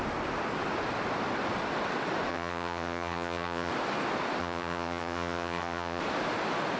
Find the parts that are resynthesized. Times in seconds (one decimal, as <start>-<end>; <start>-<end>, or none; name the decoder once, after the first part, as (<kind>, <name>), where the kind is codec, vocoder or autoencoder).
2.3-3.7 (vocoder, HiFi-GAN); 4.4-6.0